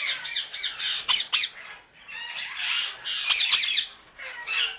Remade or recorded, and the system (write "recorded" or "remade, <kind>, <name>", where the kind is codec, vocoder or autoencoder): recorded